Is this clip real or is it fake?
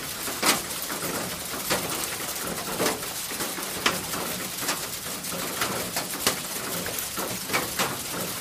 real